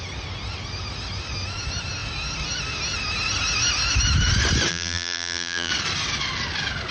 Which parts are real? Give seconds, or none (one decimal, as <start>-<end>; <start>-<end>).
0.0-4.7; 5.7-6.9

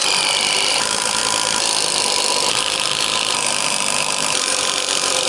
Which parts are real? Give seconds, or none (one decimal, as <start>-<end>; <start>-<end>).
0.0-0.7; 1.2-2.5

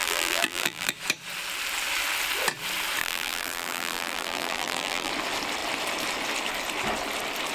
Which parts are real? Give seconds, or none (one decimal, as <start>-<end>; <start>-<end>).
0.9-3.0; 5.1-7.5